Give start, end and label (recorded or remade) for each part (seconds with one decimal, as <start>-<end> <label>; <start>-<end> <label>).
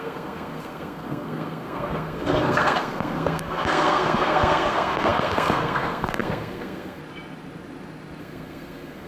0.0-7.0 remade; 7.0-8.2 recorded; 8.2-9.1 remade